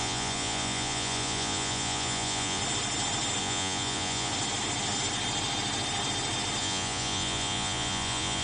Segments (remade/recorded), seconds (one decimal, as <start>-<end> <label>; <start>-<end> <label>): 0.0-2.6 remade; 2.6-3.4 recorded; 3.4-4.3 remade; 4.3-6.6 recorded; 6.6-8.4 remade